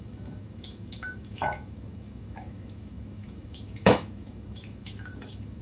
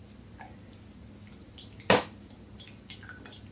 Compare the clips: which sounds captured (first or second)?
second